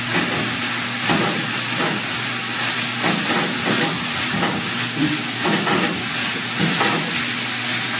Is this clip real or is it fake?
real